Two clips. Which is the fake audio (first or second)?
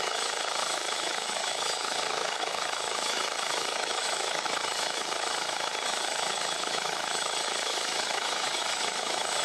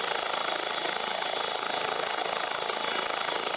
first